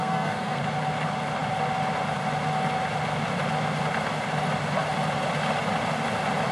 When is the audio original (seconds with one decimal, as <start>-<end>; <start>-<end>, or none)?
0.6-6.5